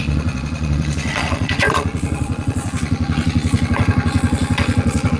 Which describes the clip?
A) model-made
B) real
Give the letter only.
A